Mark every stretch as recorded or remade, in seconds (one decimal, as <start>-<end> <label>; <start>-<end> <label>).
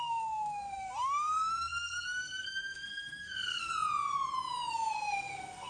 0.0-3.7 remade; 3.7-4.7 recorded; 4.7-5.7 remade